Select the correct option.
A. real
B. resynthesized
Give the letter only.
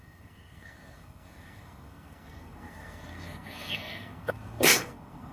B